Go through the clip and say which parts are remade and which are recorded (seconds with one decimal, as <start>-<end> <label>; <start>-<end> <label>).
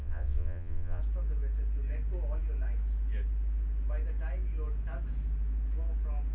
0.0-1.0 remade; 1.0-6.3 recorded